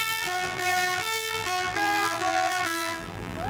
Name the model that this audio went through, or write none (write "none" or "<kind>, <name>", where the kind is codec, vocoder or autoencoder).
vocoder, BigVGAN v2